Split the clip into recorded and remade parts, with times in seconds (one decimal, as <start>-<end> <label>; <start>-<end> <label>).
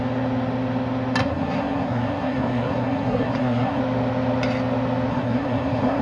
0.0-1.2 recorded; 1.2-3.8 remade; 3.8-5.1 recorded; 5.1-6.0 remade